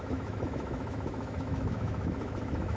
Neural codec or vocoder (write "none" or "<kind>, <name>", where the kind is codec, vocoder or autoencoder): autoencoder, DAC-VAE